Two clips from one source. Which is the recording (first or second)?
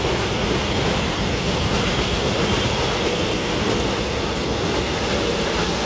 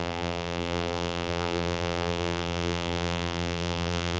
first